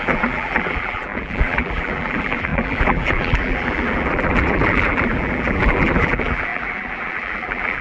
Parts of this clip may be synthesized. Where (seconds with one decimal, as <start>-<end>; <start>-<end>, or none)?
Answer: 0.0-7.8